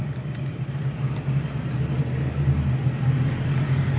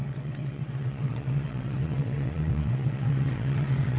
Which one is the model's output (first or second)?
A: second